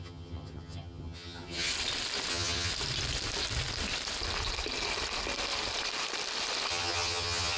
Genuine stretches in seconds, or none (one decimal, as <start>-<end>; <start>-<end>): 1.7-2.3; 2.7-6.7